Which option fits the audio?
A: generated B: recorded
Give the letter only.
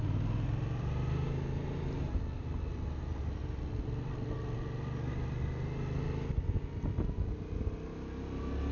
B